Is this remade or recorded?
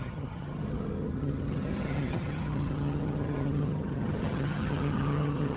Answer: remade